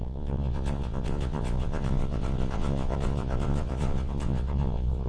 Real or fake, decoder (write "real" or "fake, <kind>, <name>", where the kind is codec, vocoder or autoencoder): fake, vocoder, Vocos